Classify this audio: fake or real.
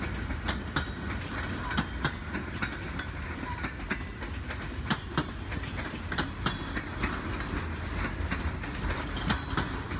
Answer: real